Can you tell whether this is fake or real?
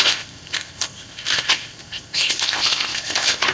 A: fake